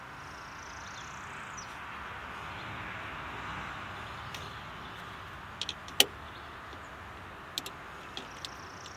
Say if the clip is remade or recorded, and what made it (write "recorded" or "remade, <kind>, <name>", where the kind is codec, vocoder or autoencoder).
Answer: recorded